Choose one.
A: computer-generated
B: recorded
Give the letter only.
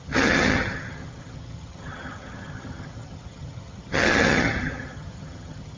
A